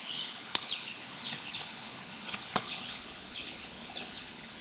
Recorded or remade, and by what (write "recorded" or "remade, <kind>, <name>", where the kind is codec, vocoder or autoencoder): remade, codec, HILCodec